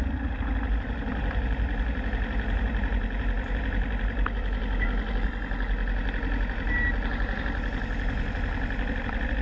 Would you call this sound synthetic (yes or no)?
no